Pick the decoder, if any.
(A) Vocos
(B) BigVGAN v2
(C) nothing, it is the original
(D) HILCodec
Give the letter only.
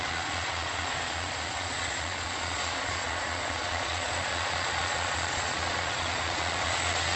A